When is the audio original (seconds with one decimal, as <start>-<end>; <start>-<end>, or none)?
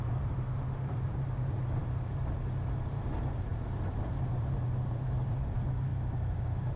none